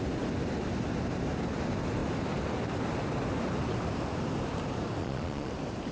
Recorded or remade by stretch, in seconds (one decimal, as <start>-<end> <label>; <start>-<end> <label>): 0.0-5.0 recorded; 5.0-5.5 remade; 5.5-5.9 recorded